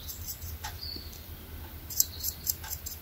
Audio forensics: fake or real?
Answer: real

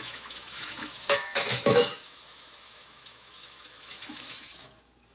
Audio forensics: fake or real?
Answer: fake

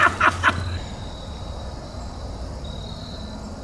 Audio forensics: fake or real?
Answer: real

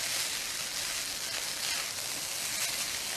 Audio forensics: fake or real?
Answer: real